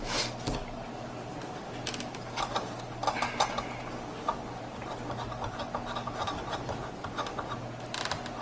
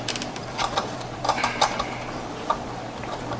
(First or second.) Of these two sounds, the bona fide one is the first